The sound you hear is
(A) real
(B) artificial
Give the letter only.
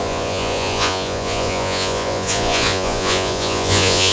B